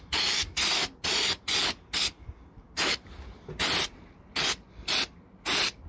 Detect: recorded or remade recorded